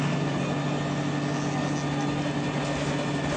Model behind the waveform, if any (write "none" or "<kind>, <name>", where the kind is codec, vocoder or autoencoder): none